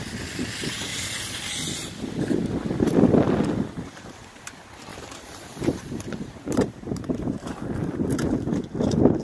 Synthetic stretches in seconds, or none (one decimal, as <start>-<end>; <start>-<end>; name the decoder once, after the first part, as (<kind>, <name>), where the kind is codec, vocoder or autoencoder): 0.9-1.5 (vocoder, BigVGAN v2); 4.9-7.6